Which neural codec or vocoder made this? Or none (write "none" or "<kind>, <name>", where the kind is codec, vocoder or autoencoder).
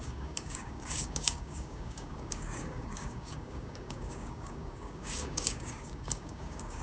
codec, DAC